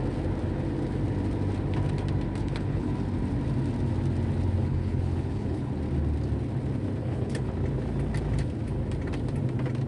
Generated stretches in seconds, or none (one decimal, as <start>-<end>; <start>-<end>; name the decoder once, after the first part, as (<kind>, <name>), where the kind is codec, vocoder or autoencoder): 2.4-2.9 (codec, HILCodec); 4.6-5.7; 7.0-7.5